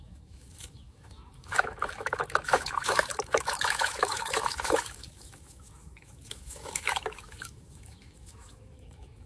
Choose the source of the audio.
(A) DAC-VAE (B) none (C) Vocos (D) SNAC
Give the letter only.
A